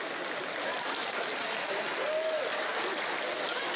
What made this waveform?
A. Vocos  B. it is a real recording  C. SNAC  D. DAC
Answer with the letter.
B